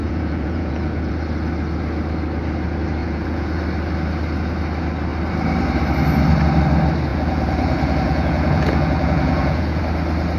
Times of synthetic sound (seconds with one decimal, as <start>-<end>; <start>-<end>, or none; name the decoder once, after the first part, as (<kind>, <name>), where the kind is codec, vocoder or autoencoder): 0.0-1.1 (vocoder, Vocos); 3.0-3.6; 7.1-9.8